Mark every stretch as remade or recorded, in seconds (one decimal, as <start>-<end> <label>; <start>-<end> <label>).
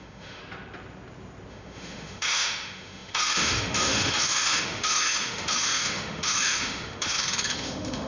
0.0-0.4 remade; 0.4-1.5 recorded; 1.5-8.1 remade